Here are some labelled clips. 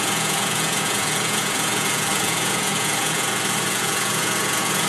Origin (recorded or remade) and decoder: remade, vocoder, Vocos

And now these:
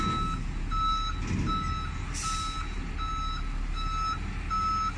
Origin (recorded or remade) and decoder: recorded